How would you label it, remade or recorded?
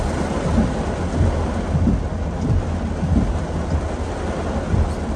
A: recorded